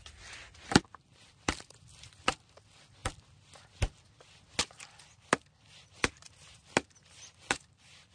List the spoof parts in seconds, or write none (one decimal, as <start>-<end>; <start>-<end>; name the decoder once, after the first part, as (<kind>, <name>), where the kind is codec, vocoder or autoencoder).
none